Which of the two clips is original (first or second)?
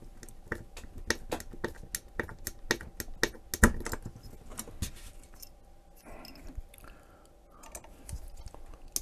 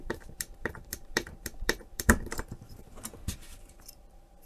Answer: first